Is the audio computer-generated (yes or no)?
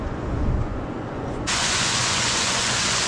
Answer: yes